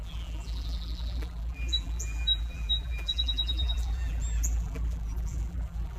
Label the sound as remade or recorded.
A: remade